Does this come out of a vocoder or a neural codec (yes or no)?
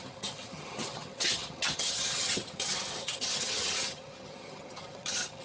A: yes